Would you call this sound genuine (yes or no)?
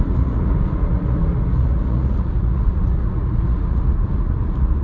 no